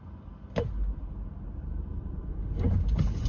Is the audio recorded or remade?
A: recorded